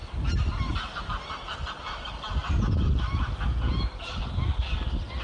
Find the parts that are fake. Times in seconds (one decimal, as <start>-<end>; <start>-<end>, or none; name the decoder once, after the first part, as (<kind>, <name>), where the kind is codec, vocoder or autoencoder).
3.5-4.1 (vocoder, Vocos)